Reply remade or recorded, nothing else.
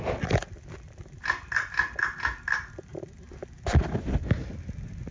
recorded